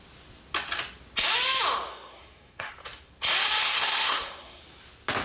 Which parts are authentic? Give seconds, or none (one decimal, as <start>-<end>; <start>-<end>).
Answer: 0.0-1.9; 2.7-3.6; 4.6-5.2